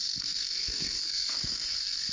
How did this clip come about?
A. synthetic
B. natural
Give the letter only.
A